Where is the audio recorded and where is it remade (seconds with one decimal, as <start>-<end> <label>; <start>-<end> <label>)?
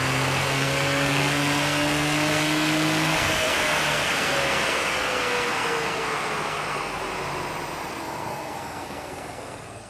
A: 0.0-7.0 remade; 7.0-7.9 recorded; 7.9-9.9 remade